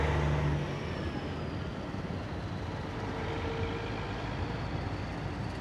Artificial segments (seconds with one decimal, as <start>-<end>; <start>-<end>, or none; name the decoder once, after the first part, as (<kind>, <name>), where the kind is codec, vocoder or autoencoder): none